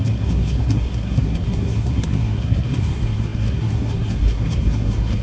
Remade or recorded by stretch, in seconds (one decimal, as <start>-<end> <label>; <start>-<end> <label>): 0.0-5.2 remade